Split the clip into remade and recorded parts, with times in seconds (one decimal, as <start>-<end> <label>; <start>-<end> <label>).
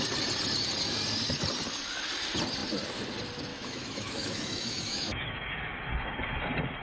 0.0-3.5 recorded; 3.5-5.9 remade; 5.9-6.8 recorded